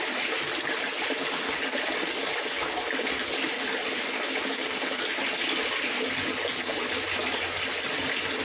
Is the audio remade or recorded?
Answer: recorded